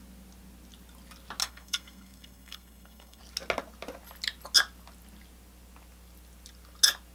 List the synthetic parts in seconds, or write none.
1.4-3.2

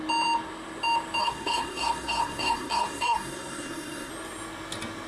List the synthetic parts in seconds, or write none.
1.2-4.1

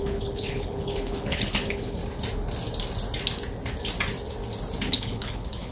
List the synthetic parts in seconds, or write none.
0.0-2.0; 4.9-5.7

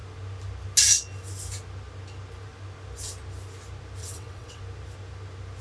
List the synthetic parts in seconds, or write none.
4.0-4.6

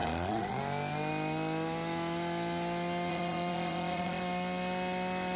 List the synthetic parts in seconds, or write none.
0.0-0.6; 3.1-4.2

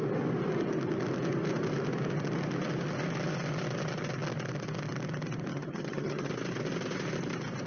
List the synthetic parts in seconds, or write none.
5.5-6.3

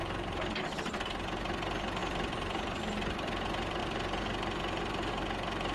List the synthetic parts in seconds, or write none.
2.0-2.8